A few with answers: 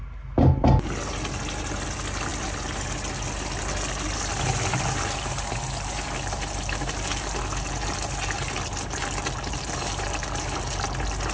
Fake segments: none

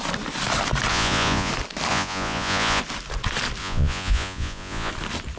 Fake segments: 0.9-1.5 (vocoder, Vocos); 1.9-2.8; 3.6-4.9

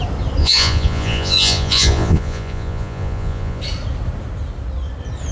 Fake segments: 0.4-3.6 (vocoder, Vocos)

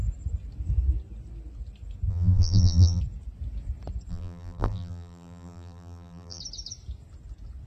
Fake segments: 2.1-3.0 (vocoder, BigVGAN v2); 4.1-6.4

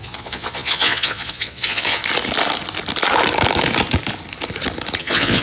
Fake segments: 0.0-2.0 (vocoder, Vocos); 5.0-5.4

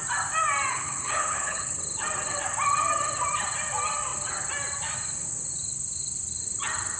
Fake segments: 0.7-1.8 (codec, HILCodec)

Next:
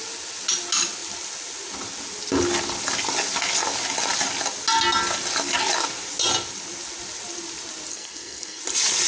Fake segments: 7.9-8.6 (codec, SNAC)

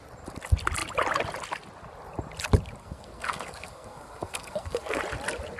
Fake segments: 2.8-5.0 (codec, SNAC)